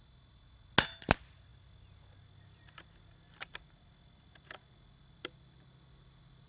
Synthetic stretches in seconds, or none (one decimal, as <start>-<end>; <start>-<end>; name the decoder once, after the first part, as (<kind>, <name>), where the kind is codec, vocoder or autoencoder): none

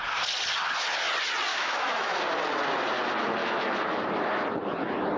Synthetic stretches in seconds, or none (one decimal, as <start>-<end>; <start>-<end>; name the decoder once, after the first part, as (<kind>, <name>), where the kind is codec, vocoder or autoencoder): 1.5-2.2 (autoencoder, DAC-VAE); 3.4-4.0

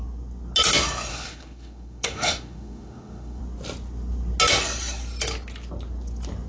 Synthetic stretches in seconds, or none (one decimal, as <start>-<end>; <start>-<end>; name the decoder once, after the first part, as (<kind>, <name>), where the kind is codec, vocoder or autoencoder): 1.1-3.4 (autoencoder, DAC-VAE)

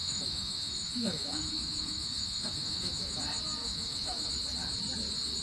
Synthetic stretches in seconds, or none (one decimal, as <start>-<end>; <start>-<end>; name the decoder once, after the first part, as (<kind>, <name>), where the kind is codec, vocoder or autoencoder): 0.0-3.2 (autoencoder, DAC-VAE); 3.6-4.3